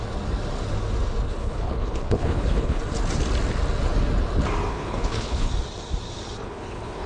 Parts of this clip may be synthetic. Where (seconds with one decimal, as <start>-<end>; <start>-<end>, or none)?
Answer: 1.4-2.8; 4.7-5.5; 6.4-7.1